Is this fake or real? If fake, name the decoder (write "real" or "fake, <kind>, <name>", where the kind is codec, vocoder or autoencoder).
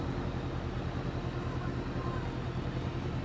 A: real